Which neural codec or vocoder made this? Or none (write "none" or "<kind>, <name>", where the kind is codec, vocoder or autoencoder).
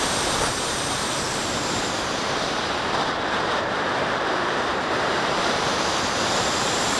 vocoder, BigVGAN v2